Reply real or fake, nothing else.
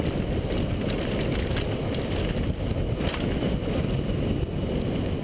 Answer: real